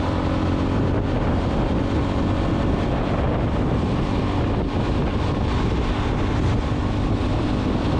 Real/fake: real